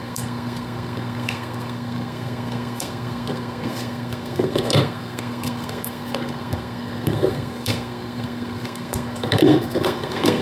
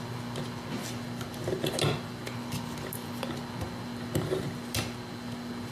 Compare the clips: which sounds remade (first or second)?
first